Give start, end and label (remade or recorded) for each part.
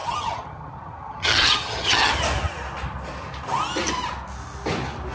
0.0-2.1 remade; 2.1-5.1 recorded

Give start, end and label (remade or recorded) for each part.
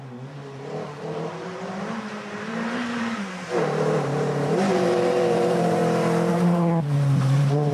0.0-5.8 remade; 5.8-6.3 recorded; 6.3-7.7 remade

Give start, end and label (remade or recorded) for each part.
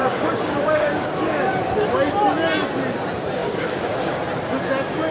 0.0-1.6 remade; 1.6-3.4 recorded; 3.4-4.2 remade; 4.2-5.1 recorded